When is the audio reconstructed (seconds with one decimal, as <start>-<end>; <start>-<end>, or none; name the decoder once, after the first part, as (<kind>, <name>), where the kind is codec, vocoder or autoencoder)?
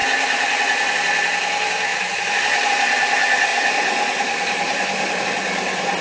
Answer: 0.0-0.9 (vocoder, BigVGAN v2); 1.9-2.7; 3.5-5.2